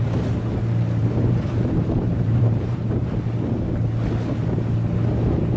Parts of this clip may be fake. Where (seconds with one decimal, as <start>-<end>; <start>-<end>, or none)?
1.0-3.1